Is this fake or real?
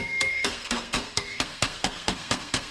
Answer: fake